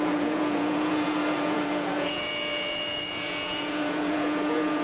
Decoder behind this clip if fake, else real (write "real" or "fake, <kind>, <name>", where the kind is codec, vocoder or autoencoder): fake, vocoder, Vocos